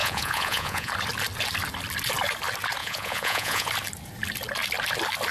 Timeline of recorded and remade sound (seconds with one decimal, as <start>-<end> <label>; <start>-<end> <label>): 0.0-0.9 remade; 0.9-2.8 recorded; 2.8-3.7 remade; 3.7-5.3 recorded